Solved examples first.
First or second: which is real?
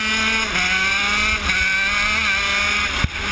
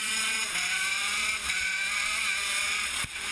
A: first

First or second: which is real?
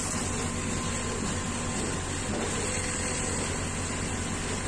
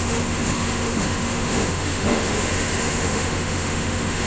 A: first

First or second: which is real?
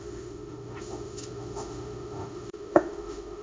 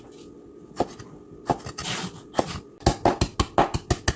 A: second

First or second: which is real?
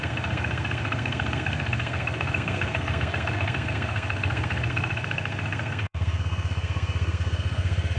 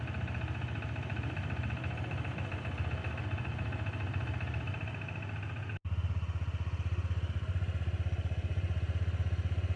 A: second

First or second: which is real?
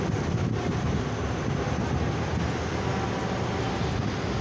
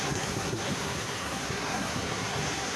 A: first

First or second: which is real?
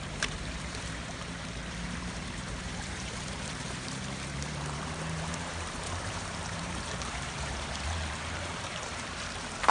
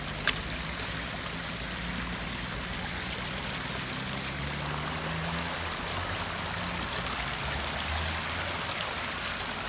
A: second